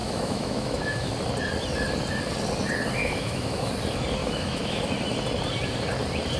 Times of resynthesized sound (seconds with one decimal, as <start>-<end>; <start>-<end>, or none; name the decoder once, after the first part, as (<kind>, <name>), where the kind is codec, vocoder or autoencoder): 0.0-1.1 (autoencoder, DAC-VAE); 3.0-3.7; 4.2-4.8